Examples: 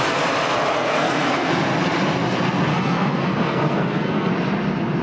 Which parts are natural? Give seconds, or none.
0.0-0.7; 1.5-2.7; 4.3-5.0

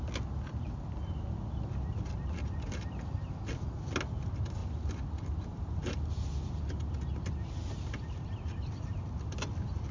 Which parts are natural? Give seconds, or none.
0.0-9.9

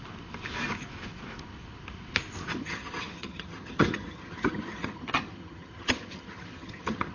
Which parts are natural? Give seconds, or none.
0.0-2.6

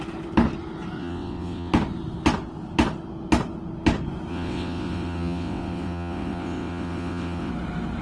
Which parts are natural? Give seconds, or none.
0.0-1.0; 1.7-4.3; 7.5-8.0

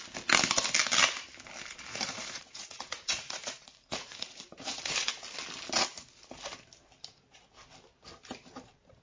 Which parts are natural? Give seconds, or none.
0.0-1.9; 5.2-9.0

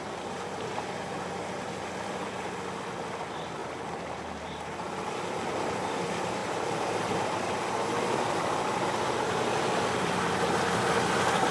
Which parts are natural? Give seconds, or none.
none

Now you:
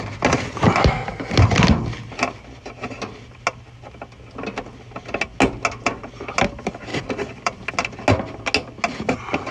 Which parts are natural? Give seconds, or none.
0.0-6.9; 7.7-9.5

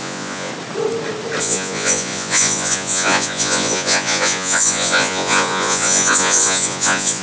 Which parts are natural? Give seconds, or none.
0.5-1.4